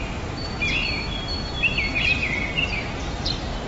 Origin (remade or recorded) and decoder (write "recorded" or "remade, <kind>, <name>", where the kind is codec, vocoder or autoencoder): recorded